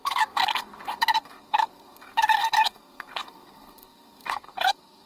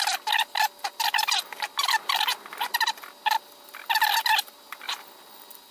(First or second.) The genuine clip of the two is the second